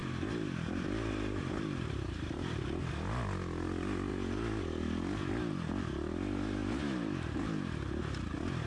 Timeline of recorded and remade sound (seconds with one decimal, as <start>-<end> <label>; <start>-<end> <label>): 0.0-2.9 remade; 2.9-8.7 recorded